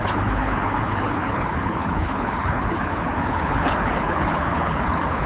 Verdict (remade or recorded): remade